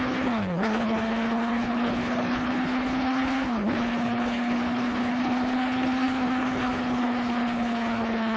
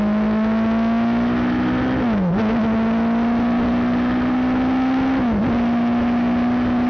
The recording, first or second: second